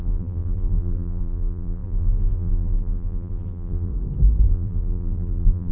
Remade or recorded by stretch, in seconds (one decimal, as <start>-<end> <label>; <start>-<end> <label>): 0.0-3.9 remade; 3.9-4.5 recorded; 4.5-5.7 remade